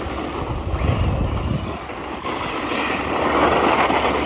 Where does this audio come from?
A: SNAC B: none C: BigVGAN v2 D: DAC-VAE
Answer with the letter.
B